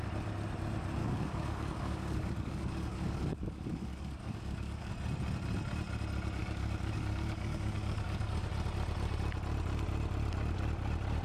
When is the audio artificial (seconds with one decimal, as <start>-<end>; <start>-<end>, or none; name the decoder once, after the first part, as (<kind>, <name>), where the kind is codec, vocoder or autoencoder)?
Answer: 1.0-4.9 (codec, DAC); 6.4-8.5